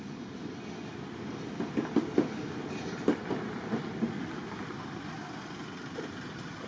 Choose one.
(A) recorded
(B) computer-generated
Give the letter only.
A